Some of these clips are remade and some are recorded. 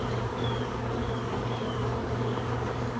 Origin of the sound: remade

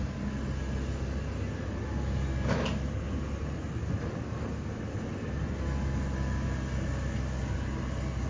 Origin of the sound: recorded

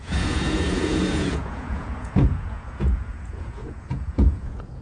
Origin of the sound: remade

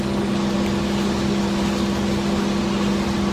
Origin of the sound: recorded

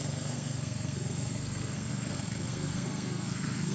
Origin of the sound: remade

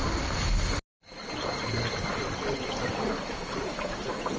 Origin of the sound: recorded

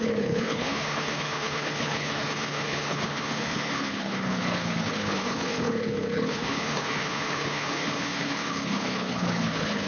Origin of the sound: remade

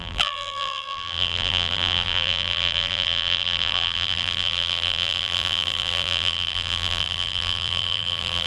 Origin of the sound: remade